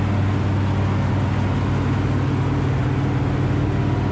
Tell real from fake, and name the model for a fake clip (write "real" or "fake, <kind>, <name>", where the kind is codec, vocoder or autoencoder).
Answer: real